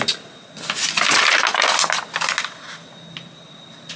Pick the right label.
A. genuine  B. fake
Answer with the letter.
A